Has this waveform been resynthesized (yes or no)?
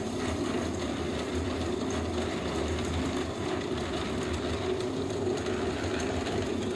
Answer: yes